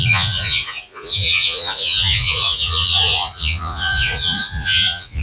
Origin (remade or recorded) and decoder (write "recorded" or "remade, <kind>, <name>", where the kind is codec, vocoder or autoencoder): remade, vocoder, Vocos